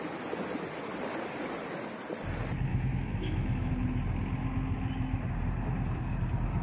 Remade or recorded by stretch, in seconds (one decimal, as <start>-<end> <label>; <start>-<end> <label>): 0.0-2.7 recorded; 2.7-3.7 remade; 3.7-6.6 recorded